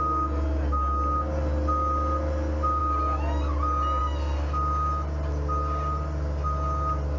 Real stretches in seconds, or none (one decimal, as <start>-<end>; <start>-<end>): 0.0-7.2

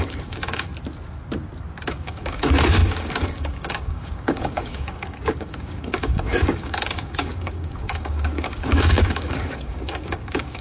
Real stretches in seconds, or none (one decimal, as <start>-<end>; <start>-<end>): 0.7-1.9

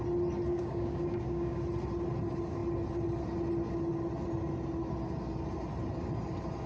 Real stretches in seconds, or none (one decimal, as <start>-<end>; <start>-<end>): 0.0-0.5; 1.6-6.7

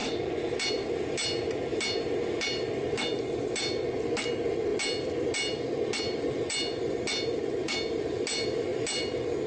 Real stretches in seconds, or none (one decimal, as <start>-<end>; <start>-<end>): 0.0-9.5

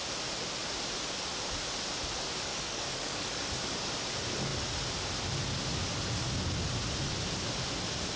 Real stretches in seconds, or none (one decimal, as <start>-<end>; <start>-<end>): 0.0-2.5; 3.5-8.2

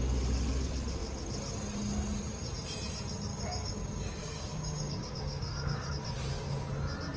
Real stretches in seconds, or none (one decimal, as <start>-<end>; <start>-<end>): 0.0-3.3; 5.9-7.2

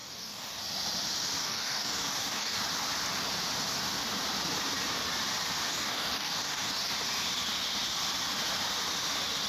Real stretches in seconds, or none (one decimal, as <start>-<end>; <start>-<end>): 0.6-1.4; 2.6-5.7; 6.9-9.5